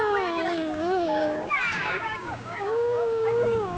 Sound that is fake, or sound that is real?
fake